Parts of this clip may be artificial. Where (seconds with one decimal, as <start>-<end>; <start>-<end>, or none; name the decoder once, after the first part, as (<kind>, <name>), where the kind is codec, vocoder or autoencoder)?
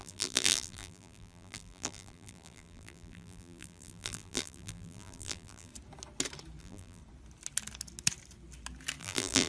0.0-5.7 (vocoder, BigVGAN v2); 6.6-7.0; 9.0-9.5